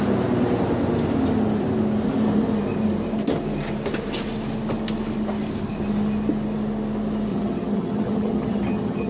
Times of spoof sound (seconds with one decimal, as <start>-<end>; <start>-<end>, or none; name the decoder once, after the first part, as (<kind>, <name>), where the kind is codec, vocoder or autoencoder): 7.3-9.1 (vocoder, HiFi-GAN)